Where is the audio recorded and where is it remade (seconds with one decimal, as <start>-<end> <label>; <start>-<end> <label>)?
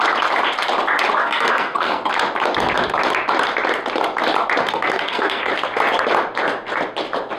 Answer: 0.0-1.2 recorded; 1.2-2.1 remade; 2.1-4.6 recorded; 4.6-5.5 remade; 5.5-7.4 recorded